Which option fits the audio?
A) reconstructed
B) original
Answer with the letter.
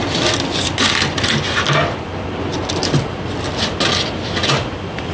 B